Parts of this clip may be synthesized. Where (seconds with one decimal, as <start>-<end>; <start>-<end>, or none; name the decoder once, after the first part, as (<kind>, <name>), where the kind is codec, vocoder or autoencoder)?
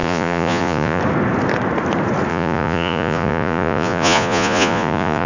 0.0-1.0 (vocoder, Vocos); 2.3-5.3